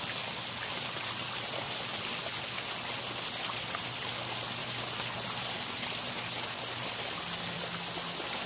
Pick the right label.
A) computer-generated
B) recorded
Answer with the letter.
B